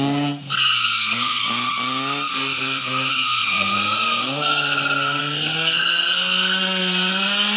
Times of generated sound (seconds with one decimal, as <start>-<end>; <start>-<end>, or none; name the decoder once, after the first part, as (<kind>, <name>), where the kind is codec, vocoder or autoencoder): 0.0-1.4 (codec, SNAC); 2.3-7.6